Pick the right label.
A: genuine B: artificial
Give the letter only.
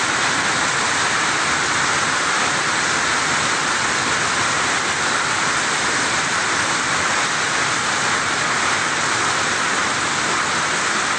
A